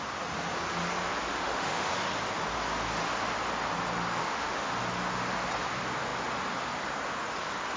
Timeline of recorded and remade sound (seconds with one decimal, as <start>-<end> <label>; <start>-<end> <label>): 0.0-1.3 recorded; 1.3-1.9 remade; 1.9-4.2 recorded; 4.2-4.8 remade; 4.8-7.8 recorded